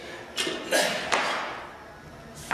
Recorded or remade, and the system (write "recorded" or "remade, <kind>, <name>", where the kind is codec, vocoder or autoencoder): recorded